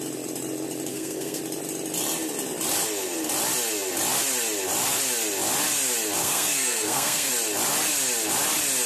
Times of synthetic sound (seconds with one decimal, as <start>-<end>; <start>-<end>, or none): 0.9-1.4; 6.2-7.3